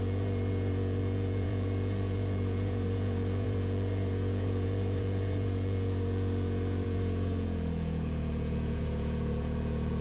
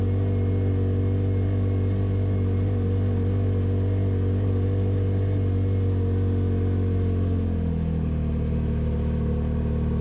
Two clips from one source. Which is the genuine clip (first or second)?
second